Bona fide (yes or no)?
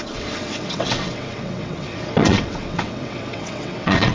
no